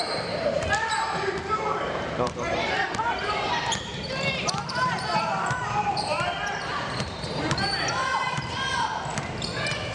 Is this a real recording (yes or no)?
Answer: no